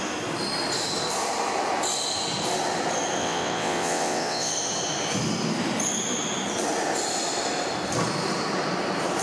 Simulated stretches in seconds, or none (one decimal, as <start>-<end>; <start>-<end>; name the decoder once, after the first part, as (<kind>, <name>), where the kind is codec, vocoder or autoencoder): 3.2-4.5 (vocoder, WaveNeXt)